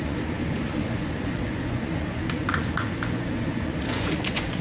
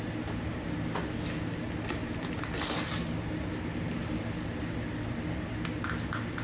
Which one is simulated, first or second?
first